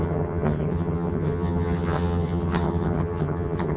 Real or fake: fake